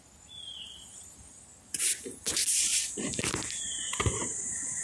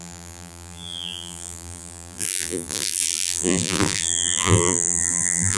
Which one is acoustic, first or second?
first